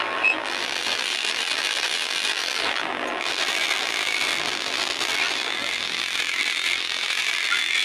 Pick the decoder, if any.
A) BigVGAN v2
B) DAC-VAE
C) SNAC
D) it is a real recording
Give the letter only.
A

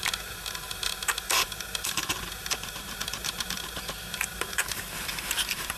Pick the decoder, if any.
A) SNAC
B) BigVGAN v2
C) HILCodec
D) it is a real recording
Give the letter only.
B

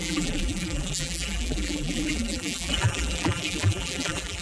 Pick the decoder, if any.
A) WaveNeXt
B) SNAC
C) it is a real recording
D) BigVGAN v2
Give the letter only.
D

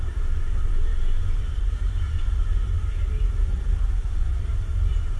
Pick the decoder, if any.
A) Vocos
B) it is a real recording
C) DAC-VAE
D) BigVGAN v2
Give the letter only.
D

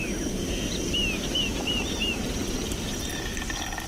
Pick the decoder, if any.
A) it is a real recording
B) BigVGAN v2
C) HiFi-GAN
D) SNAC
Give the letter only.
B